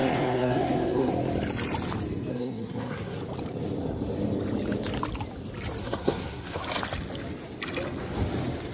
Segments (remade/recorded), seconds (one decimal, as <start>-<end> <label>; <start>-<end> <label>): 0.0-1.1 remade; 1.1-2.3 recorded; 2.3-3.2 remade; 3.2-5.8 recorded; 5.8-6.6 remade; 6.6-8.7 recorded